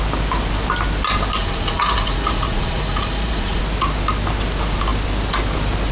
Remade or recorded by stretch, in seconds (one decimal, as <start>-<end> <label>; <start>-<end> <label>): 0.0-1.4 recorded; 1.4-3.6 remade; 3.6-5.9 recorded